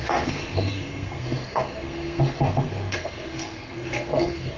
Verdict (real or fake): fake